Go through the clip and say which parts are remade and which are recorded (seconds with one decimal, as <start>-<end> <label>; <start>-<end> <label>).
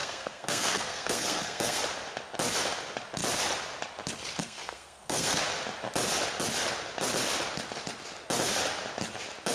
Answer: 0.0-1.8 remade; 1.8-4.4 recorded; 4.4-5.4 remade; 5.4-9.5 recorded